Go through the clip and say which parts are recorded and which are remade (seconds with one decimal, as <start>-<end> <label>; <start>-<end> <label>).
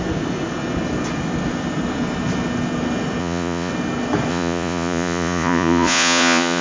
0.0-3.2 recorded; 3.2-3.7 remade; 3.7-4.3 recorded; 4.3-6.6 remade